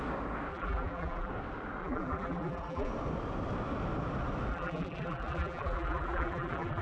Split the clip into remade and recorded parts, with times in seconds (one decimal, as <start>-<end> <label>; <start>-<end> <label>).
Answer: 0.0-0.5 recorded; 0.5-1.3 remade; 1.3-1.8 recorded; 1.8-2.9 remade; 2.9-4.5 recorded; 4.5-6.8 remade